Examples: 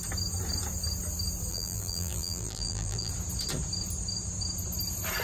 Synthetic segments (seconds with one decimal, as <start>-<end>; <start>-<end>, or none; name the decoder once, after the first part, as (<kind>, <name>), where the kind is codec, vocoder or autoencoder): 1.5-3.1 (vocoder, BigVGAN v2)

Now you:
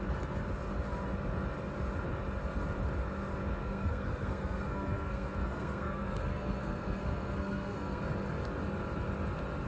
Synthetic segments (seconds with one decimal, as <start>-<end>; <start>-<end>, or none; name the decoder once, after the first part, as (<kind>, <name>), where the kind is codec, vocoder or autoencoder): 3.6-8.0 (codec, SNAC)

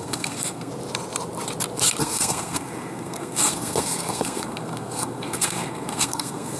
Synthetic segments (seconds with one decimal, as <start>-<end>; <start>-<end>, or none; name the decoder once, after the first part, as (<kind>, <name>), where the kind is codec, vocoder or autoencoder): 0.0-0.7 (codec, SNAC); 2.0-6.6